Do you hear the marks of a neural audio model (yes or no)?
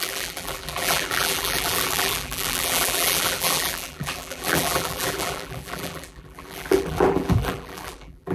yes